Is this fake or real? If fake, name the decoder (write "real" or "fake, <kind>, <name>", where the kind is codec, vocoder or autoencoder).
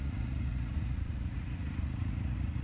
fake, vocoder, Vocos